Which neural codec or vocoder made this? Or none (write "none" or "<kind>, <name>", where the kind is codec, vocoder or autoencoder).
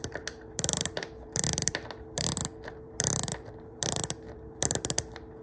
vocoder, BigVGAN v2